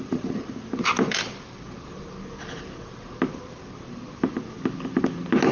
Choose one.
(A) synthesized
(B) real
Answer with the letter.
B